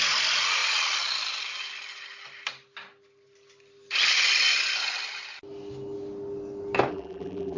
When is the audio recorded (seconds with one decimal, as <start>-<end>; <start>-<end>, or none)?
0.0-6.9